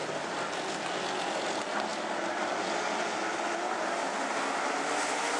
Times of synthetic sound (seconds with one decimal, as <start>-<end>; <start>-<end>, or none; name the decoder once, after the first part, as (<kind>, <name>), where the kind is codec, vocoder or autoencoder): none